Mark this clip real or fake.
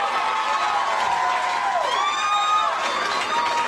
real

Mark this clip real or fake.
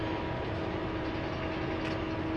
real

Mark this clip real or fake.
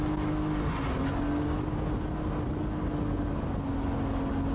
real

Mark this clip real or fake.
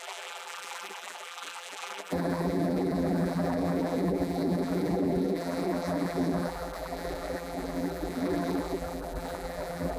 fake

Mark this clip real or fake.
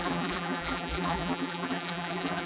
fake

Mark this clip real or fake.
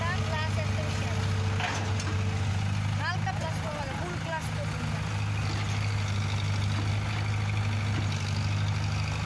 real